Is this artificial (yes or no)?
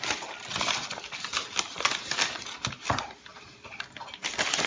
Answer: no